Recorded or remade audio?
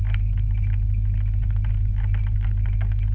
recorded